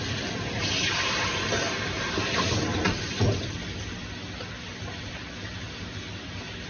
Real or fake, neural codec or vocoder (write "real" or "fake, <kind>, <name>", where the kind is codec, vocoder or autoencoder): fake, vocoder, BigVGAN v2